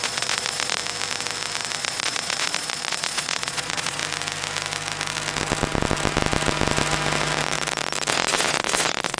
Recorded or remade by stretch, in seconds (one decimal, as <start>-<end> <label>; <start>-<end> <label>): 0.0-0.8 remade; 0.8-1.8 recorded; 1.8-4.0 remade; 4.0-8.1 recorded; 8.1-9.2 remade

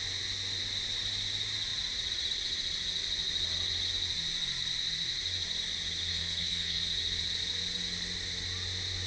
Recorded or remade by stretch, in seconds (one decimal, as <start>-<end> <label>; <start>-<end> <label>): 0.0-6.1 recorded; 6.1-6.8 remade; 6.8-9.1 recorded